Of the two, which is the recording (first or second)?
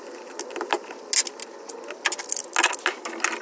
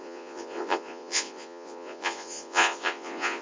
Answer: first